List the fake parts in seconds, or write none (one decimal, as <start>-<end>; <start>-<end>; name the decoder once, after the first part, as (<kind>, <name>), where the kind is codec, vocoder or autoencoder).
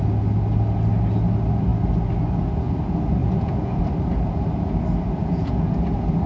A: 3.2-3.8 (vocoder, Vocos); 5.2-5.8